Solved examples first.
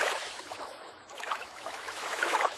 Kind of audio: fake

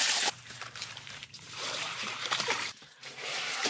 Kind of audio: fake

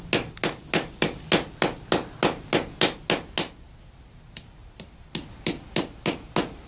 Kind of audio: real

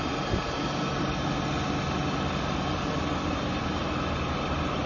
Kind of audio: real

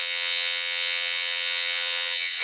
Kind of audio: fake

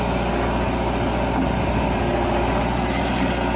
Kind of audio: real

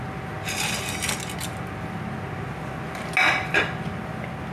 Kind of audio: real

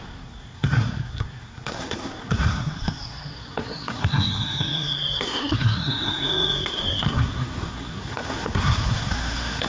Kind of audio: fake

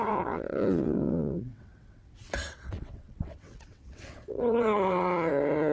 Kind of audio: fake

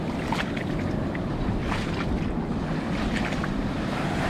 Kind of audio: real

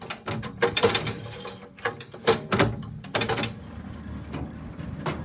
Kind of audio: real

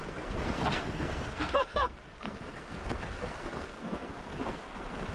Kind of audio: fake